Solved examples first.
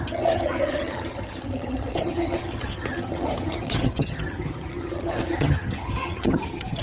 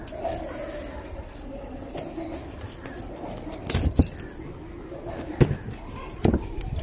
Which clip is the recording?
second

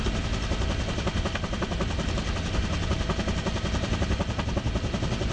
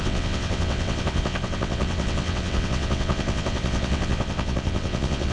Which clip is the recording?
first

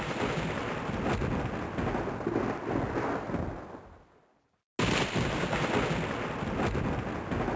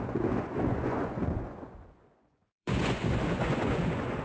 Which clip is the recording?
first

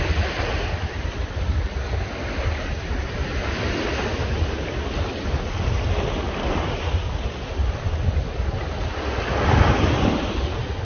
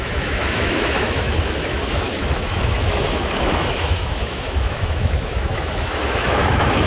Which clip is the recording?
first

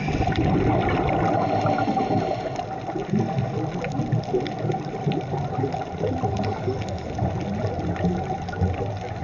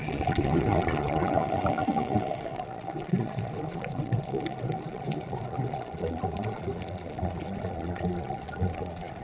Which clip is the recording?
first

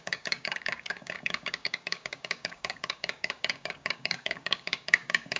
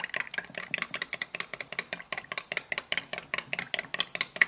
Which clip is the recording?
second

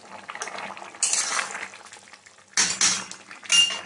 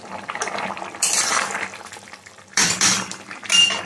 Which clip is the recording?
first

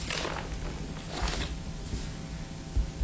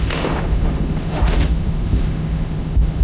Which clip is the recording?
first